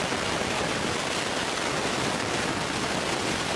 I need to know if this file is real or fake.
real